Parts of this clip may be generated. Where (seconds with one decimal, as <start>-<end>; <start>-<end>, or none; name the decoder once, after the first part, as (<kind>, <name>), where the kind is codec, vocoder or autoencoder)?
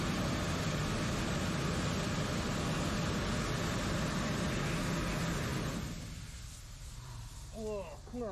none